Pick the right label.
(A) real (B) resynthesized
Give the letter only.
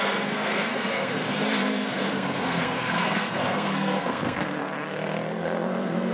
B